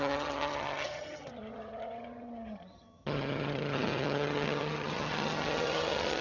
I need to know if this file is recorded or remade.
remade